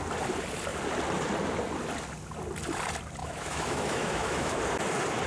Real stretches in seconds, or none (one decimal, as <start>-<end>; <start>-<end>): 0.0-3.2; 4.6-5.3